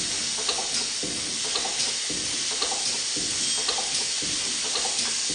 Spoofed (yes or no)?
no